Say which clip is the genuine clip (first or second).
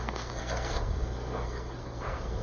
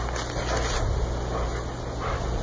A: second